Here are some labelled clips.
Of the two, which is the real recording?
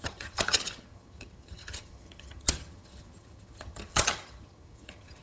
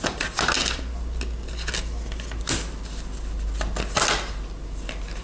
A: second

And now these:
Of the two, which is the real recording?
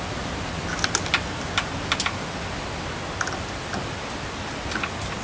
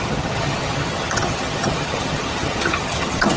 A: first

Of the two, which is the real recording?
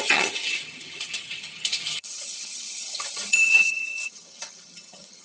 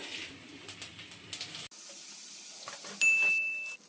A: second